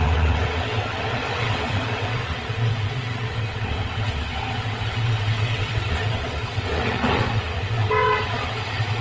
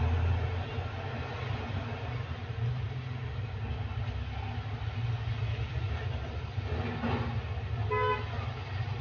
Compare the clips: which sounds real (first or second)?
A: second